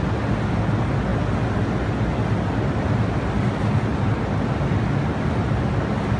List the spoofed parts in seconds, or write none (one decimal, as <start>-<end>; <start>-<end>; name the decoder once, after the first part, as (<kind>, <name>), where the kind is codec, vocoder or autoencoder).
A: none